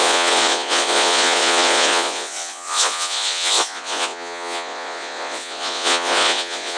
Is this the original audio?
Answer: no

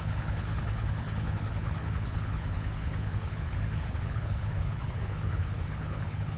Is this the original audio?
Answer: no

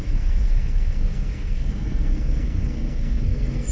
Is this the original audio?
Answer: no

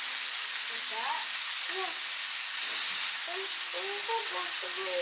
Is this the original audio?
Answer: yes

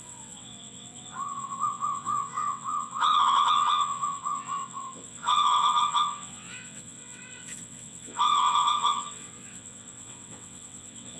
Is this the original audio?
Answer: no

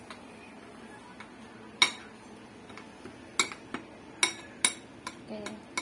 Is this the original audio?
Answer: yes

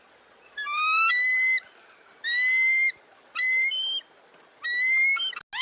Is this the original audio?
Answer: yes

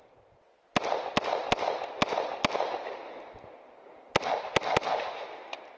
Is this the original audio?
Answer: yes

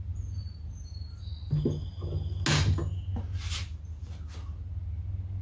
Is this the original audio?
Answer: yes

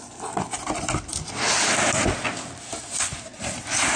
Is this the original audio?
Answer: yes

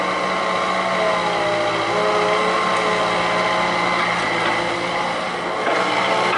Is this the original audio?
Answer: yes